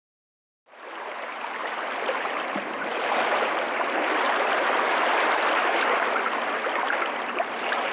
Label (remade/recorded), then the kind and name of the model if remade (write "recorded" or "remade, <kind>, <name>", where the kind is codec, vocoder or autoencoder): recorded